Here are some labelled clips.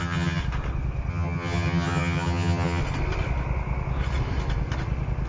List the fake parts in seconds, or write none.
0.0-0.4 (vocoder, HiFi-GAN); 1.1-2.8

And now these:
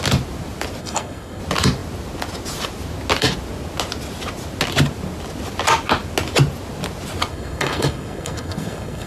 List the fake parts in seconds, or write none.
0.8-1.4 (codec, SNAC); 7.3-9.1

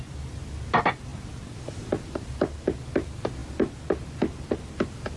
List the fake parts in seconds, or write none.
1.1-2.3 (vocoder, BigVGAN v2)

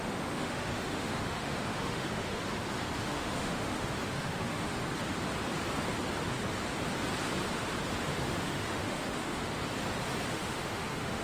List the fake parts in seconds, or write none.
0.0-2.4 (autoencoder, DAC-VAE); 3.0-4.8; 8.0-9.5; 10.3-11.2